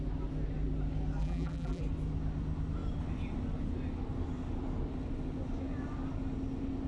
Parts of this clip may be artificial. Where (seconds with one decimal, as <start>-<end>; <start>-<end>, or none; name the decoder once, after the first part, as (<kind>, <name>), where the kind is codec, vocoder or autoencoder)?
1.2-1.8 (vocoder, BigVGAN v2)